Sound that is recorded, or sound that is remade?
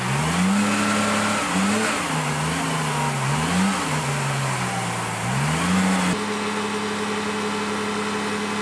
recorded